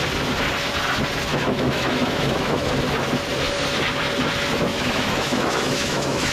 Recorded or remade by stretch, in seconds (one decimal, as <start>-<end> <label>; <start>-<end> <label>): 0.0-1.3 recorded; 1.3-2.7 remade; 2.7-4.7 recorded; 4.7-6.3 remade